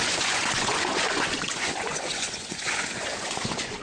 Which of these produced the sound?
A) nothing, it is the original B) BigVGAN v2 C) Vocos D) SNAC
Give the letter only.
C